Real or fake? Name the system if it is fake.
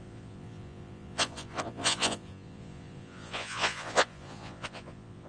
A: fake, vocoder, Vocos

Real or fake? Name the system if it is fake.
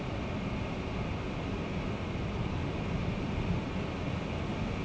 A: real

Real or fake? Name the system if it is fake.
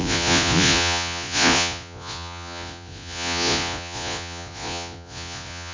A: fake, vocoder, Vocos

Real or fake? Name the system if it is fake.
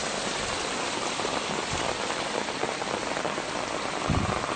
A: real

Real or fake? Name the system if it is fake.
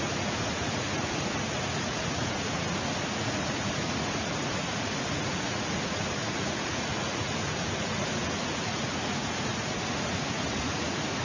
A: fake, vocoder, Vocos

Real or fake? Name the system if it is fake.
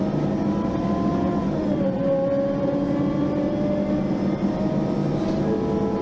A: real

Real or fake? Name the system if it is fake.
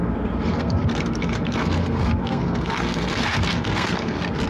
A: fake, codec, SNAC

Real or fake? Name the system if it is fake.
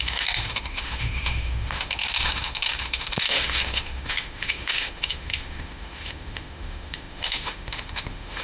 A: fake, autoencoder, DAC-VAE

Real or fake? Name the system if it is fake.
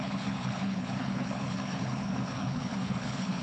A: fake, codec, HILCodec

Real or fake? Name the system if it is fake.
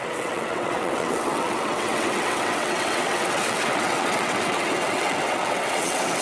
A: fake, vocoder, WaveNeXt